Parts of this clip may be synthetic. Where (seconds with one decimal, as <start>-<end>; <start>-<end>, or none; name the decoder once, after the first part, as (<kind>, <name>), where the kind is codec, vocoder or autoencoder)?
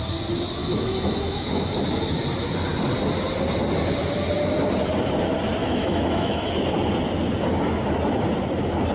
0.6-1.7 (autoencoder, DAC-VAE); 5.6-6.5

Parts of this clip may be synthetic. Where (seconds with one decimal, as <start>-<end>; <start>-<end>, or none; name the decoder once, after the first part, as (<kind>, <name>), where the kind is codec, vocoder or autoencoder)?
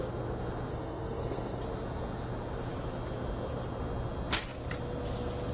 0.7-1.6 (codec, SNAC)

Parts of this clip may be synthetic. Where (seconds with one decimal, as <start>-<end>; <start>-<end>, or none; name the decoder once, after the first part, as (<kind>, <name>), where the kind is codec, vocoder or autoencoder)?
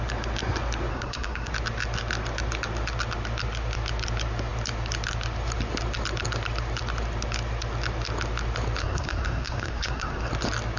0.9-1.5 (codec, SNAC); 8.8-10.3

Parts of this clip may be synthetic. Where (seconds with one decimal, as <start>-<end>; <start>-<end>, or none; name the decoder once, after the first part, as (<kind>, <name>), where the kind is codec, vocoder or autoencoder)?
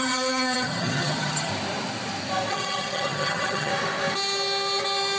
0.0-1.5 (vocoder, HiFi-GAN); 2.5-3.7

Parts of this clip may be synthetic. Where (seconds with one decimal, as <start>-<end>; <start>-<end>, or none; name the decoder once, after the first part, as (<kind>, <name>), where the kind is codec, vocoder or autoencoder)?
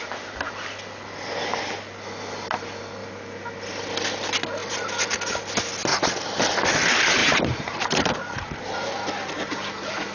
3.0-3.8 (vocoder, BigVGAN v2); 4.6-5.4; 5.9-6.4; 7.2-8.6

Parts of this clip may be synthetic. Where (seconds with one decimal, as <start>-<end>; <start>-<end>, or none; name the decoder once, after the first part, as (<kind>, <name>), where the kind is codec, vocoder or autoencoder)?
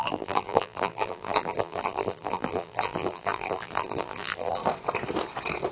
0.0-4.6 (vocoder, BigVGAN v2)